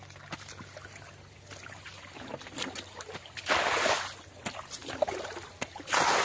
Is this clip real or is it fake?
real